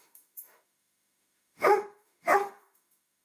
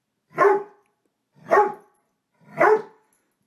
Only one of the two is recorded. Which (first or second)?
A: second